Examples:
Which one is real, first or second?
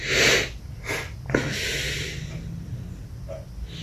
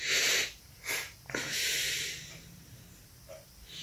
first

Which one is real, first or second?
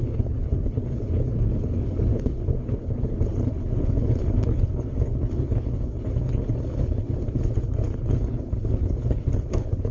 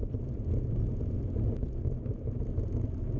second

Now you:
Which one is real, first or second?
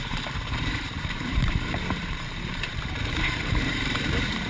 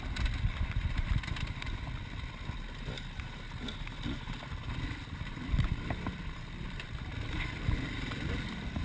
second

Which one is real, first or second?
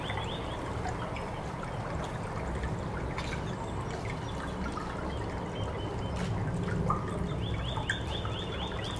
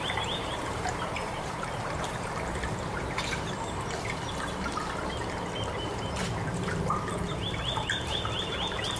first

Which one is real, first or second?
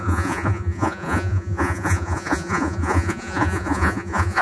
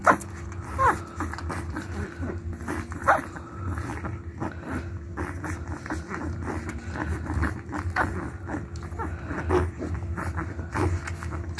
second